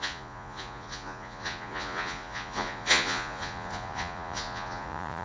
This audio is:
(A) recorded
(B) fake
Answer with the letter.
B